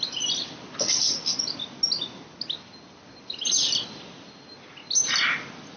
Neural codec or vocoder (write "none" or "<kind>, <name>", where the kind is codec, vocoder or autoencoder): none